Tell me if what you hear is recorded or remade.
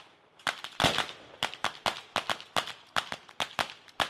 recorded